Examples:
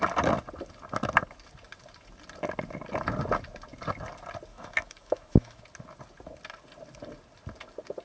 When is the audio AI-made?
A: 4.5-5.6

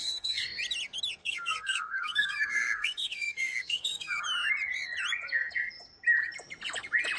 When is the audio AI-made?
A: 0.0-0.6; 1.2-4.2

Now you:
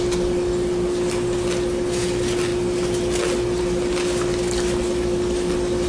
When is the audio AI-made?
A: none

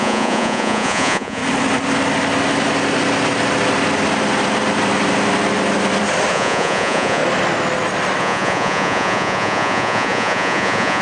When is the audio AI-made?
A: 0.0-1.4; 6.3-7.2; 8.2-11.0

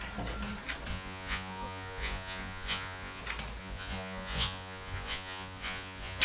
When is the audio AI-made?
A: 0.9-3.2; 3.6-6.2